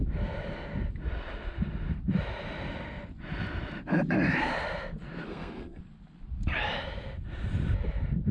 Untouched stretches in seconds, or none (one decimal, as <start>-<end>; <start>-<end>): 0.0-5.3; 5.8-8.3